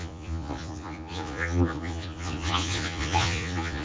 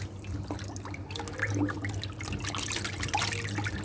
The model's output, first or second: first